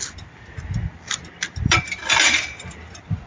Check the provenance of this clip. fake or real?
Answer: fake